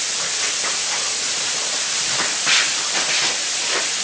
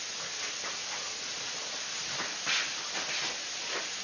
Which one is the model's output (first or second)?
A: first